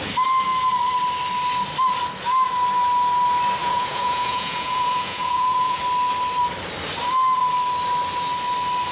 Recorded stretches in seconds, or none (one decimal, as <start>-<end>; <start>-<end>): 0.0-3.6; 5.8-8.9